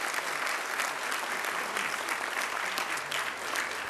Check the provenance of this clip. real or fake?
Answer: real